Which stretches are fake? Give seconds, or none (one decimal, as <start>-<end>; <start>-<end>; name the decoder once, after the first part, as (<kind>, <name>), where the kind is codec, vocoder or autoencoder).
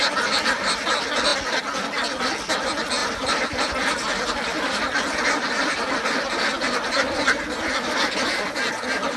3.0-3.7 (vocoder, BigVGAN v2)